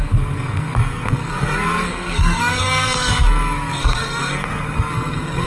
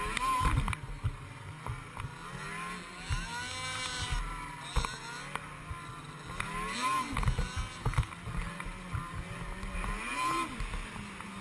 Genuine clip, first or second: second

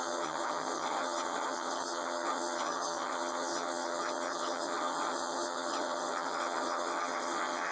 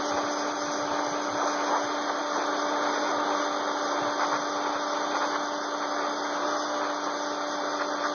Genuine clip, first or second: second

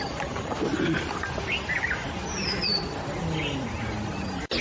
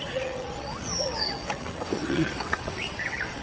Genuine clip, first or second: first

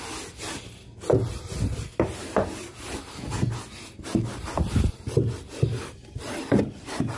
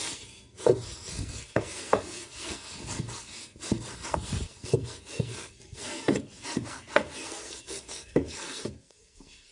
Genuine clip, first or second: first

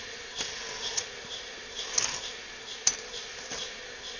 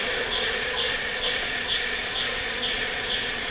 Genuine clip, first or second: first